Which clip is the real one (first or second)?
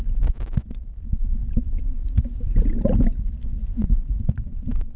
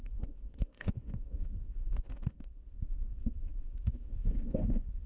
first